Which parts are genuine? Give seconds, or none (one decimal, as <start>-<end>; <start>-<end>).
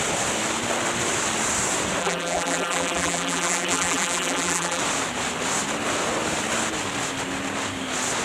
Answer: 0.0-2.0; 4.8-8.2